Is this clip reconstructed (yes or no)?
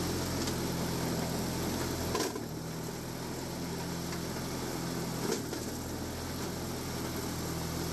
no